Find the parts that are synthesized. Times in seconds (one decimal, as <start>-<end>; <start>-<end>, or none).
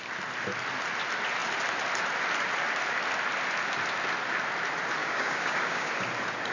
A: 5.0-5.9